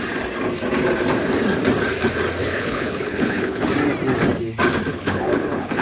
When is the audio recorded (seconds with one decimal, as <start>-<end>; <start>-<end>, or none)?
0.0-2.4; 3.7-4.9